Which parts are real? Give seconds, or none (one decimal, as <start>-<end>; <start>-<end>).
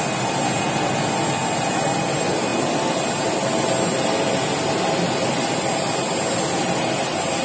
0.0-7.4